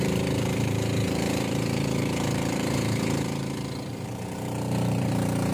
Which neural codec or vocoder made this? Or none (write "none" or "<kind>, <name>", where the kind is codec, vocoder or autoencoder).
vocoder, BigVGAN v2